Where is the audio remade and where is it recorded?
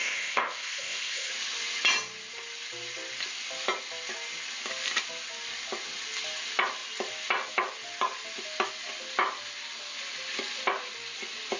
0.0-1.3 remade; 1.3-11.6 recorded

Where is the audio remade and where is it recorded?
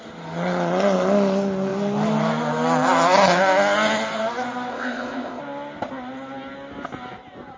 0.0-4.7 recorded; 4.7-5.4 remade; 5.4-7.6 recorded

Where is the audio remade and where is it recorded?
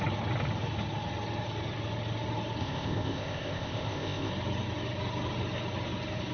0.0-2.6 recorded; 2.6-4.3 remade; 4.3-6.3 recorded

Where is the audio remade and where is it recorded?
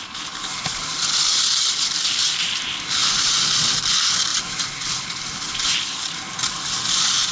0.0-7.3 recorded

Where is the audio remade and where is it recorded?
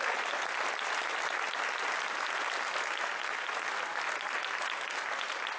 0.0-5.6 recorded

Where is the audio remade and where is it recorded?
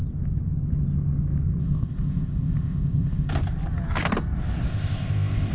0.0-1.6 recorded; 1.6-3.3 remade; 3.3-4.7 recorded; 4.7-5.5 remade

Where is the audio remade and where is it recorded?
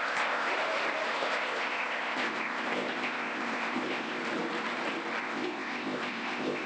0.0-0.5 remade; 0.5-1.1 recorded; 1.1-4.2 remade; 4.2-5.2 recorded; 5.2-6.7 remade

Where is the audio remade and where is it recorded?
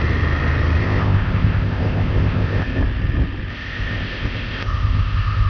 0.0-0.8 recorded; 0.8-2.8 remade; 2.8-3.5 recorded; 3.5-5.5 remade